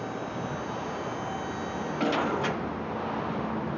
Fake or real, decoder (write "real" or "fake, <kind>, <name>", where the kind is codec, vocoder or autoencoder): real